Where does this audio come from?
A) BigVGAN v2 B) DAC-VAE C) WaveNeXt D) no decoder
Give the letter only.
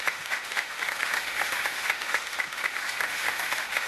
B